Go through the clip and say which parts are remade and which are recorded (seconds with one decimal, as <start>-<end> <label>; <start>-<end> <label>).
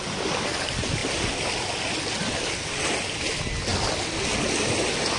0.0-5.2 recorded